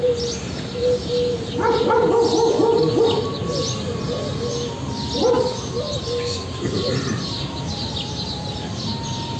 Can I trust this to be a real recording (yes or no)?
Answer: yes